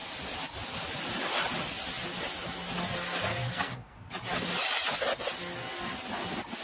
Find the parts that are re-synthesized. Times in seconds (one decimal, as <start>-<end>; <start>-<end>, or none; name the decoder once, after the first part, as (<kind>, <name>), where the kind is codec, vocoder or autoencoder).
3.3-4.1 (codec, SNAC)